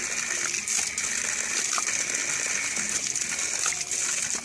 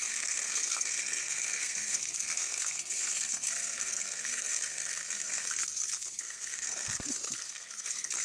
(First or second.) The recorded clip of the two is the first